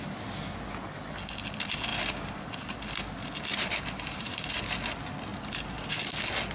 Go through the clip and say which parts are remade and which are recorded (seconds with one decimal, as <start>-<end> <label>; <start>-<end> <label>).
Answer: 0.0-1.9 recorded; 1.9-2.8 remade; 2.8-3.5 recorded; 3.5-4.4 remade; 4.4-5.3 recorded; 5.3-5.9 remade; 5.9-6.5 recorded